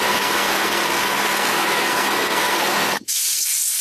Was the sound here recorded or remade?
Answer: remade